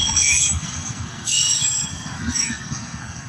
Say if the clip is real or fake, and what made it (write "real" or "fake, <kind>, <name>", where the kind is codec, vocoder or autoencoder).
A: fake, codec, SNAC